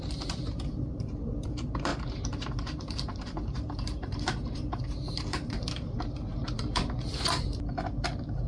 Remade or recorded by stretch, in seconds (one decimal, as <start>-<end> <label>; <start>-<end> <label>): 0.0-7.1 remade; 7.1-8.0 recorded; 8.0-8.5 remade